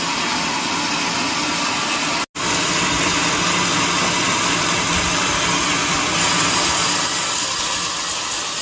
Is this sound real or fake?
real